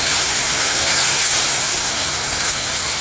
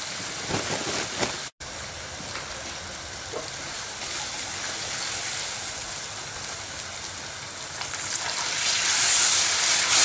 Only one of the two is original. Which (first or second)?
second